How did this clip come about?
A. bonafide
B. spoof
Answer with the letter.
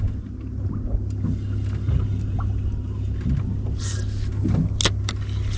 A